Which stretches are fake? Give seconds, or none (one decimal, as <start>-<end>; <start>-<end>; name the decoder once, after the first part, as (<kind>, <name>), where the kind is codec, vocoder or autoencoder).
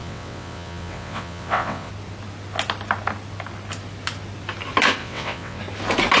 0.0-1.9 (vocoder, WaveNeXt); 5.0-5.6